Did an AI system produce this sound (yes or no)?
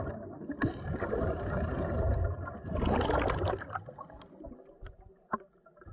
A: no